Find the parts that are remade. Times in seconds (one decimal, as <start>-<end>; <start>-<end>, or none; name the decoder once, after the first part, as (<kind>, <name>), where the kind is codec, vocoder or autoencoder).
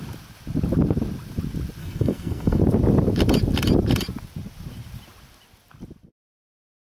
1.8-2.6 (codec, SNAC)